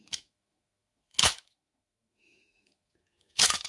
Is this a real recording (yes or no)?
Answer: no